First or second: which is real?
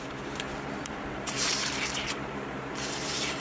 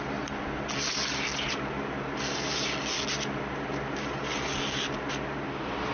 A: second